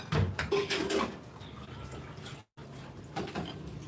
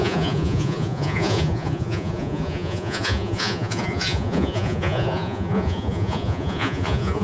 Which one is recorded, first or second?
first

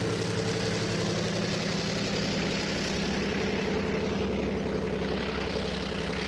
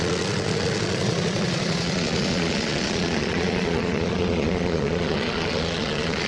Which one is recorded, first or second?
first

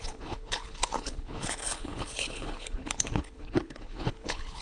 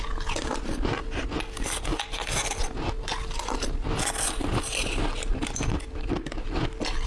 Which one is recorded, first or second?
second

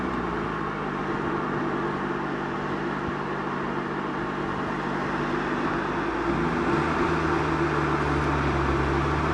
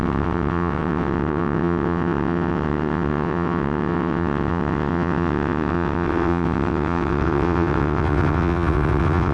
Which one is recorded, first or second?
first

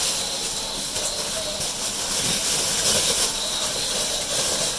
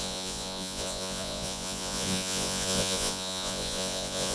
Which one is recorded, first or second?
first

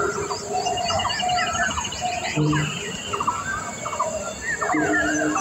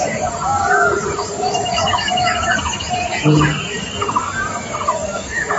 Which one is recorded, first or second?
first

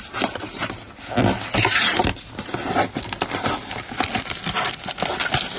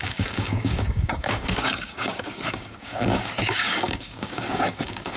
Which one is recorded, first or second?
first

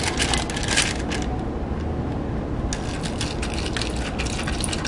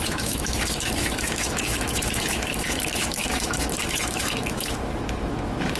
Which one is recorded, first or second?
first